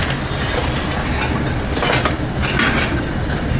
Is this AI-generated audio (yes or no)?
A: no